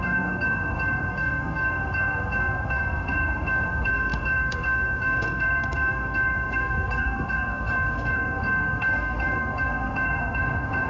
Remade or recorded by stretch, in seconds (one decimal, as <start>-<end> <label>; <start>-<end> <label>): 0.0-10.9 remade